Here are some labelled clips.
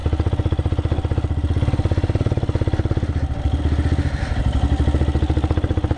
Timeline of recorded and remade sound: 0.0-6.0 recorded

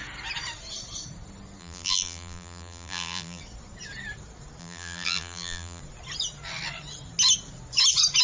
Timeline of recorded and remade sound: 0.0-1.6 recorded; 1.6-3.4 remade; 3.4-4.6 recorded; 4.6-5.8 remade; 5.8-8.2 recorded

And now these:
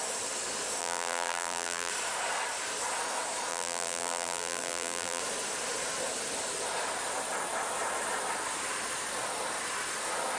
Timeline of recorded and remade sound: 0.0-0.8 recorded; 0.8-1.9 remade; 1.9-3.5 recorded; 3.5-5.2 remade; 5.2-10.4 recorded